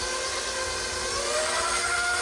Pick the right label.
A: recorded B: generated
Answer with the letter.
A